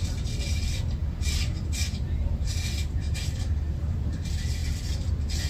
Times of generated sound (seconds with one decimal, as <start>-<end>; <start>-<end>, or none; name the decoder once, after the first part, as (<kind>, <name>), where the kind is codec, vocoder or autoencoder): none